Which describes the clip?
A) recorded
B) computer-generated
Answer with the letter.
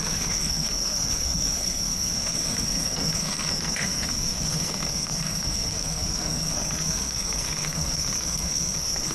B